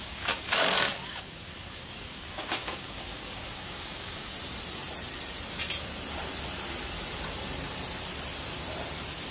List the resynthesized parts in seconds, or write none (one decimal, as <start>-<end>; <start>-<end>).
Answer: 0.0-4.3